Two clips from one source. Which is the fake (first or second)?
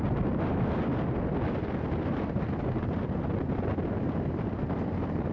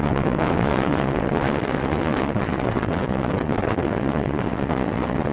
second